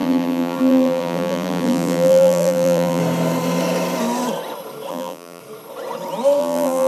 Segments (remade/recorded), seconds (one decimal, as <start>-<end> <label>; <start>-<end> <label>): 0.0-3.0 remade; 3.0-4.9 recorded; 4.9-5.4 remade; 5.4-6.4 recorded; 6.4-6.9 remade